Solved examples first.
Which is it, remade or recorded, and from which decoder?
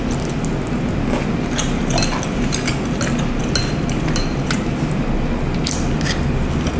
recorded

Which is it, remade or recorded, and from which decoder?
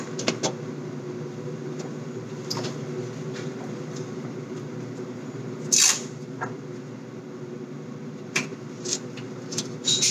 recorded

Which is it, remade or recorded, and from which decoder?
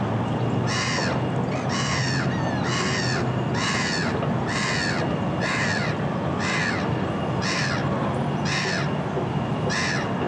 recorded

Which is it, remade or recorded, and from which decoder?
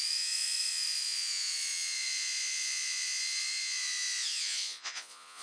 remade, vocoder, Vocos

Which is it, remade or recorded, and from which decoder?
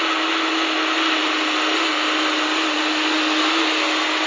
recorded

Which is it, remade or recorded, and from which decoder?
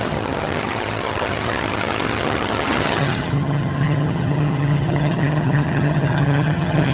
remade, vocoder, HiFi-GAN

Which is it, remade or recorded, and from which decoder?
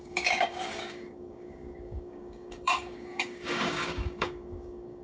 remade, codec, DAC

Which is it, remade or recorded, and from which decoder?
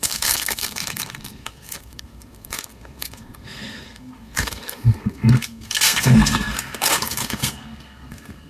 remade, codec, SNAC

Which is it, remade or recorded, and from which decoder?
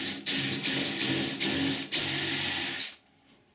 recorded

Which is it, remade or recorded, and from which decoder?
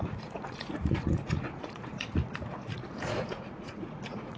remade, vocoder, Vocos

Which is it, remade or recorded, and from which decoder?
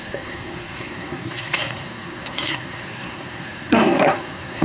remade, codec, SNAC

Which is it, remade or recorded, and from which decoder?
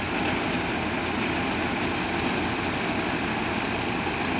recorded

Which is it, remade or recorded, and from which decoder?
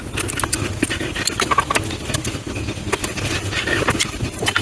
recorded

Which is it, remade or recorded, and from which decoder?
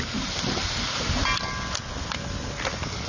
recorded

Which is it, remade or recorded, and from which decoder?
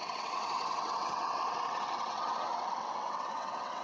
remade, vocoder, WaveNeXt